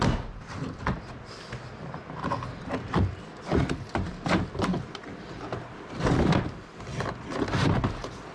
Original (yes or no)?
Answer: yes